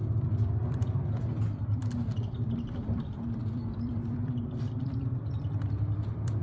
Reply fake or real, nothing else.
fake